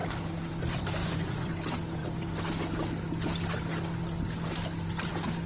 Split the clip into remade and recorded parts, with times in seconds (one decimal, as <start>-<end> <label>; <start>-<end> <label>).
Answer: 0.0-1.0 recorded; 1.0-1.5 remade; 1.5-5.5 recorded